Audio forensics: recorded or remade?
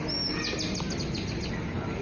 recorded